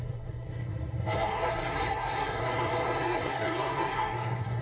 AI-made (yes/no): yes